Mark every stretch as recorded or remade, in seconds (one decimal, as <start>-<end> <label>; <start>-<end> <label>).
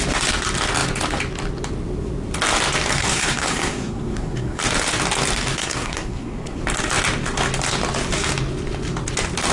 0.0-3.0 recorded; 3.0-4.6 remade; 4.6-5.6 recorded; 5.6-6.6 remade; 6.6-9.5 recorded